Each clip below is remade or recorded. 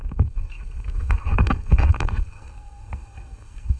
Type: remade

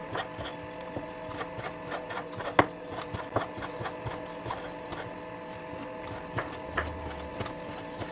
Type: recorded